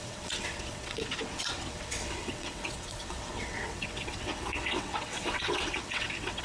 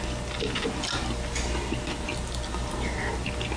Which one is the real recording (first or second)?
second